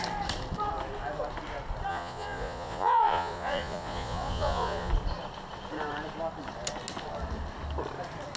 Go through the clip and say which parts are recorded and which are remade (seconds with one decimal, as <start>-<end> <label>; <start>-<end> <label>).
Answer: 0.0-1.9 recorded; 1.9-4.9 remade; 4.9-8.4 recorded